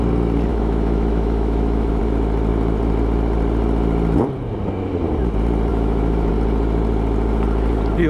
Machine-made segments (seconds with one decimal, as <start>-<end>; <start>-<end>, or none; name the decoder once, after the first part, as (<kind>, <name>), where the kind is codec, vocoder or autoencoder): 0.5-2.0 (autoencoder, DAC-VAE); 5.7-6.3